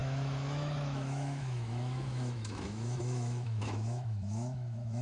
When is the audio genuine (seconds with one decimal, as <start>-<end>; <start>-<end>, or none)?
none